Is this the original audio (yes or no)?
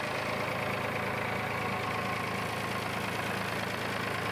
yes